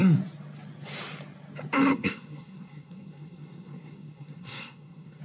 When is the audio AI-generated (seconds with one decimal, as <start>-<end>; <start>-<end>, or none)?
1.9-5.2